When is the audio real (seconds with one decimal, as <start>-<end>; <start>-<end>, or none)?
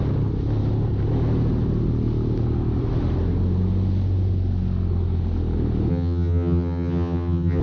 0.0-5.9